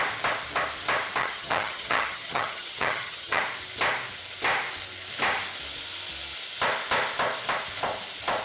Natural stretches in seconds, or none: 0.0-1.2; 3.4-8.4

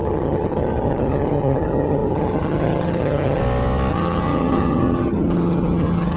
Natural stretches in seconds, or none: 3.4-3.9

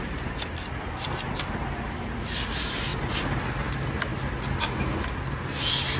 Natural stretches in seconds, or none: 0.0-6.0

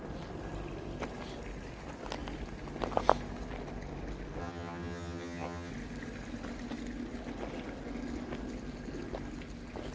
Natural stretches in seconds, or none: 0.0-4.4; 5.7-9.9

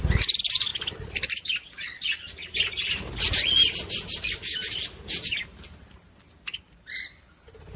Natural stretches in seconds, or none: 0.0-7.8